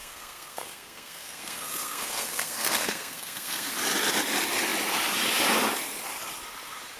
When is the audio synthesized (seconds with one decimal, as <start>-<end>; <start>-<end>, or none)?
0.0-3.7